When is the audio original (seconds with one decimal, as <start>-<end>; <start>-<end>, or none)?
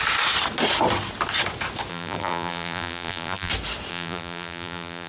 0.0-1.9; 3.5-3.9